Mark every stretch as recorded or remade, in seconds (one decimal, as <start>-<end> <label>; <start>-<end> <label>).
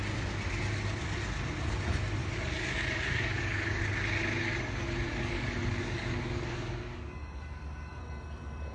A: 0.0-2.2 recorded; 2.2-3.8 remade; 3.8-5.1 recorded; 5.1-8.0 remade; 8.0-8.7 recorded